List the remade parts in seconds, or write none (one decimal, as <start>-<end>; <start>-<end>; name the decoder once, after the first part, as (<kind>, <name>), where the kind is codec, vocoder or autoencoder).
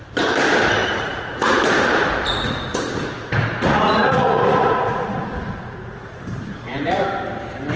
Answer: 0.8-1.6 (vocoder, Vocos); 2.3-7.0